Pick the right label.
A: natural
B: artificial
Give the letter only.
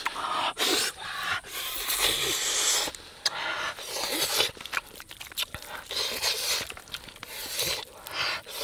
A